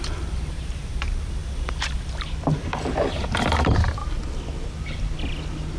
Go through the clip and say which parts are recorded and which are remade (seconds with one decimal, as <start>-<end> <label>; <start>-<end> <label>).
0.0-1.4 remade; 1.4-2.6 recorded; 2.6-4.0 remade; 4.0-5.8 recorded